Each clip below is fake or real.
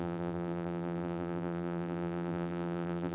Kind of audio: fake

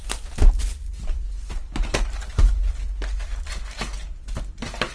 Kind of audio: real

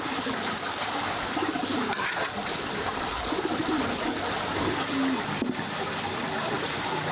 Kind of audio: real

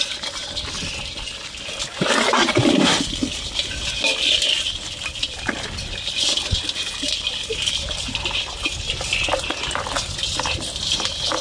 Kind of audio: real